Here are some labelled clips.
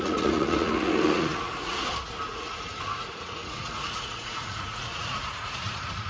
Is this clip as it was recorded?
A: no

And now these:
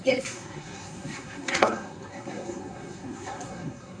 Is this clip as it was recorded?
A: no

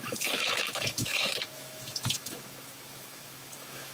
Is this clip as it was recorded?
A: no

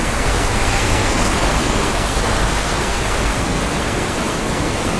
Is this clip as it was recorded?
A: no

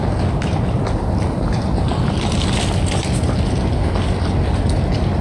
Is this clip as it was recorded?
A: yes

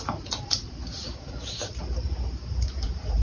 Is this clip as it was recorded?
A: no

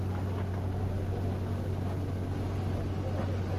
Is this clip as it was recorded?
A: yes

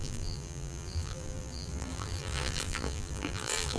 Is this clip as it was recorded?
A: no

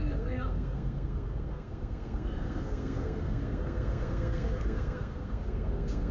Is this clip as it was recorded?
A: no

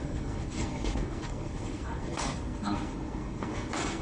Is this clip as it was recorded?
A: no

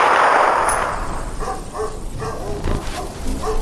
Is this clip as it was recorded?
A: yes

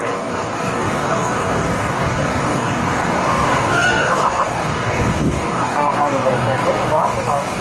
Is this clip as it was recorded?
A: no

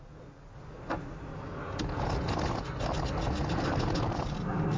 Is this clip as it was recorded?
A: yes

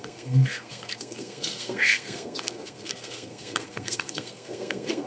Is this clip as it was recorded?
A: no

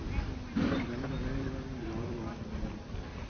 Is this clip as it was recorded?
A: yes